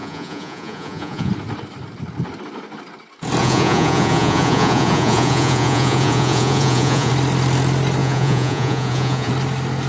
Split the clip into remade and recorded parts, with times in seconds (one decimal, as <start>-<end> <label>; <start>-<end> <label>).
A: 0.0-1.3 remade; 1.3-3.4 recorded; 3.4-7.1 remade; 7.1-8.0 recorded; 8.0-9.3 remade; 9.3-9.9 recorded